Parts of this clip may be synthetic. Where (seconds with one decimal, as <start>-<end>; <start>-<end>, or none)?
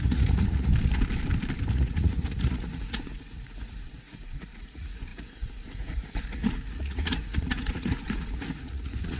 0.0-0.7; 1.7-9.2